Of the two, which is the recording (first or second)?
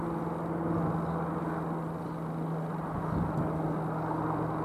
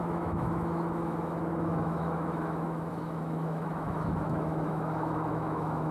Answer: first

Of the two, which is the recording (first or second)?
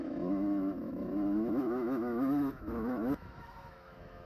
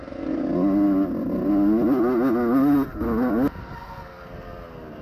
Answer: second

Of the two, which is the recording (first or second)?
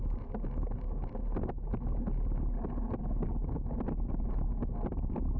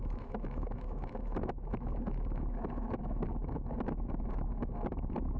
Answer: first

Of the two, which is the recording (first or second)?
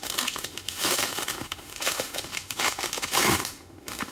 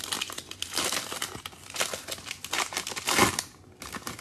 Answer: second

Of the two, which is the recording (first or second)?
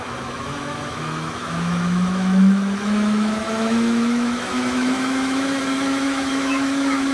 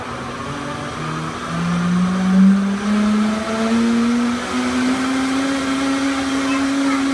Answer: second